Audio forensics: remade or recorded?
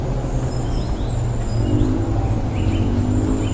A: recorded